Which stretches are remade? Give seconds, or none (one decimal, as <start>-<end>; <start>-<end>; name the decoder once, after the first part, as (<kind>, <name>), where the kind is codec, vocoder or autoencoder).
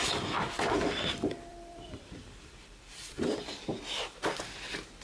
1.5-4.5 (vocoder, BigVGAN v2)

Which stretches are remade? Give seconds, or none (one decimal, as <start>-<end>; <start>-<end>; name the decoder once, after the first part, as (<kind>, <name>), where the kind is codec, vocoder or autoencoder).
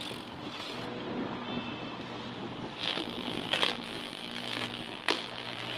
2.8-5.8 (vocoder, BigVGAN v2)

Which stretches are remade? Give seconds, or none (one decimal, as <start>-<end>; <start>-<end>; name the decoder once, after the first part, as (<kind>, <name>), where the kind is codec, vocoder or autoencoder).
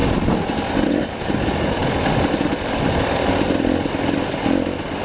0.0-1.3 (vocoder, BigVGAN v2)